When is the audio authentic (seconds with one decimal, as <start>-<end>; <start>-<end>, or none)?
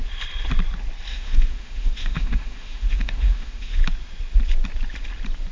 0.0-1.1; 3.8-5.5